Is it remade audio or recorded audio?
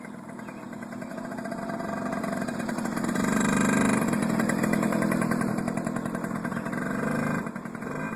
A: recorded